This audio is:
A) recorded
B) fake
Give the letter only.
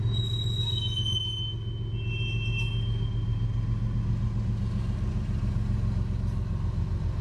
A